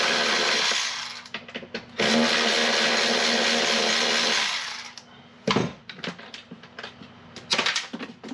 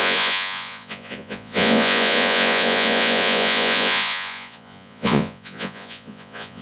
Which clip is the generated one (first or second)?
second